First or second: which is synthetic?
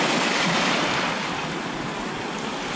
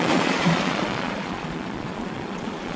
second